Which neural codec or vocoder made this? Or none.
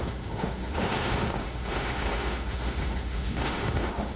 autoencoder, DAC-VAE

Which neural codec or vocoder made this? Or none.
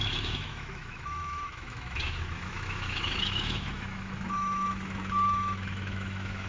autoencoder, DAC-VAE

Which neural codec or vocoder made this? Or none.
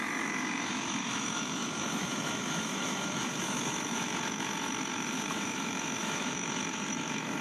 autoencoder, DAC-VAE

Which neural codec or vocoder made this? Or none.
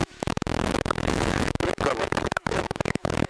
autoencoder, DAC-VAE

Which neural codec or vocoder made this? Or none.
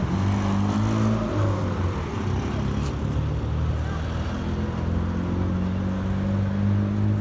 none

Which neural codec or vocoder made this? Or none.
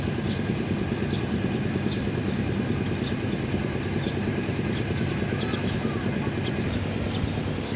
none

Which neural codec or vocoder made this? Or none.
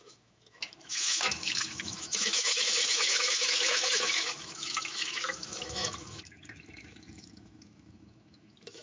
autoencoder, DAC-VAE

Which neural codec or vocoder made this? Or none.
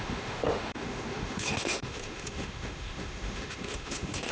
autoencoder, DAC-VAE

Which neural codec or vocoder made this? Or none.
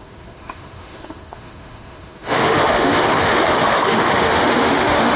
autoencoder, DAC-VAE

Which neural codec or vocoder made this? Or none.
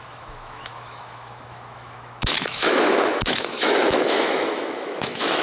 autoencoder, DAC-VAE